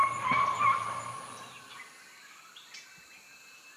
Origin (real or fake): real